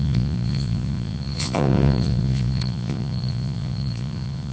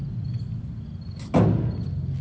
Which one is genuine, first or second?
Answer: second